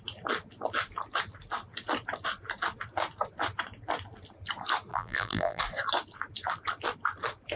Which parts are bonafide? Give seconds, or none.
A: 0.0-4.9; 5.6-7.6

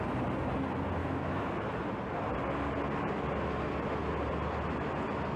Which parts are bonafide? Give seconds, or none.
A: 0.0-1.0; 1.7-5.4

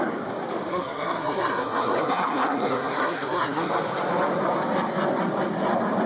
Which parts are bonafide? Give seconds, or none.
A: 0.0-0.7; 3.7-6.1

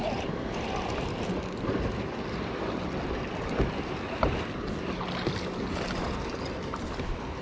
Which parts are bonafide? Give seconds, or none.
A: 0.0-7.4

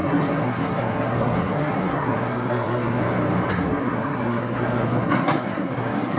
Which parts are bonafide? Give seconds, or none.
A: 3.0-3.5

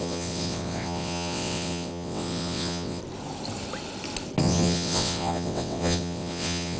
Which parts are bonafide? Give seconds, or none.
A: 3.0-4.4

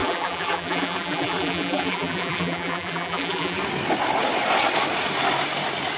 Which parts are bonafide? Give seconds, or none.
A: 3.6-6.0

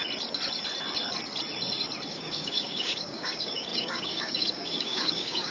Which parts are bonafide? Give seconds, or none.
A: 0.0-2.1